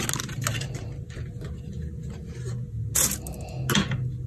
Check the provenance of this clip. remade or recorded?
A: recorded